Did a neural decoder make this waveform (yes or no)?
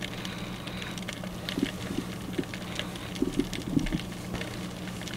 no